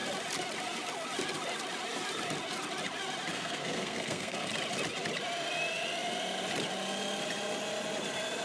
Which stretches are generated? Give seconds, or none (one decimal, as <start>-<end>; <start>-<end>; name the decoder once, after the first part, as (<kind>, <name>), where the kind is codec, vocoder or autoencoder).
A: 3.3-4.5 (codec, SNAC)

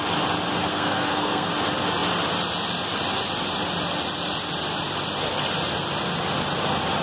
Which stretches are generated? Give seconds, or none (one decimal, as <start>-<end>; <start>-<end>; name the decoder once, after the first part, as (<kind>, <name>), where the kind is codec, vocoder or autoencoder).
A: 0.7-1.5 (codec, SNAC)

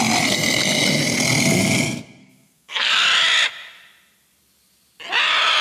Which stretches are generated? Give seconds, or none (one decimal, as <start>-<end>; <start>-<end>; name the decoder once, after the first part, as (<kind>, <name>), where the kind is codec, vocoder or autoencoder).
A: 2.2-2.9 (codec, SNAC)

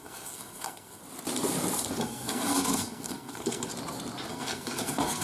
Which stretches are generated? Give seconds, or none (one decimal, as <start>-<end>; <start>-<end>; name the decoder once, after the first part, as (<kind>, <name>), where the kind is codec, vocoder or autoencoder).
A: 0.0-1.0 (codec, SNAC); 2.0-3.7; 4.3-5.2

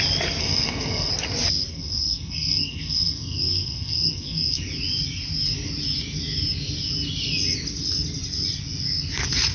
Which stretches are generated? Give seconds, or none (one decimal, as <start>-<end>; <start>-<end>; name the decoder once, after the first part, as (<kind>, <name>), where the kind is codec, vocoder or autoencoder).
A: 0.4-1.1 (codec, SNAC); 1.7-4.6

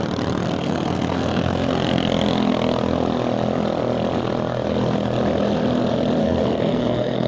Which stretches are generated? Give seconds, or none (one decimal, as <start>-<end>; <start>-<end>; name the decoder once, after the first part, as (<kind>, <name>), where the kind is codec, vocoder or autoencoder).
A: 0.6-1.7 (codec, SNAC); 6.2-7.3